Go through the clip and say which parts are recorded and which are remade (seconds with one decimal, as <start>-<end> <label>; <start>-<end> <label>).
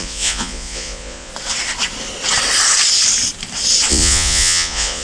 0.0-1.3 remade; 1.3-3.9 recorded; 3.9-5.0 remade